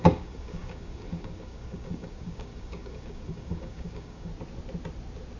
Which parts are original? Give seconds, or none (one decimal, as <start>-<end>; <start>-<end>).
4.3-5.4